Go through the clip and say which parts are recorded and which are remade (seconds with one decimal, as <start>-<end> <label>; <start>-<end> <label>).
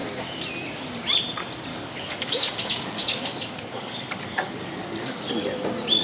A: 0.0-1.7 recorded; 1.7-5.3 remade; 5.3-6.0 recorded